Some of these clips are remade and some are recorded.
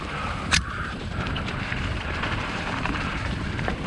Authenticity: remade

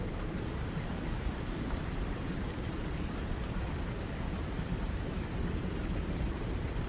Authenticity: remade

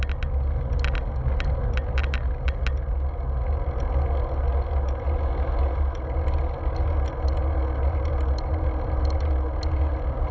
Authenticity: recorded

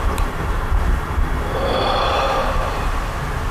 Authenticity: remade